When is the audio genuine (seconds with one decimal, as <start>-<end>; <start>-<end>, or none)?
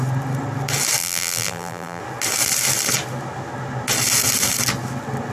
0.0-1.0; 2.0-5.3